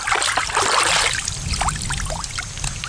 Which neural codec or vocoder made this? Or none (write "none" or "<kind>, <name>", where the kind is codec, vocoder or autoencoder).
none